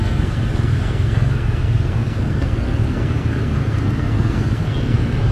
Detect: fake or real fake